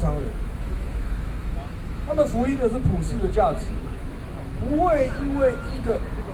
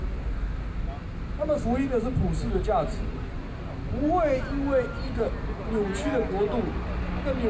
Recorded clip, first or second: second